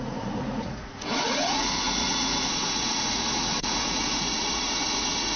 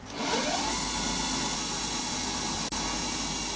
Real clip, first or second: second